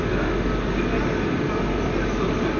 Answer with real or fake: real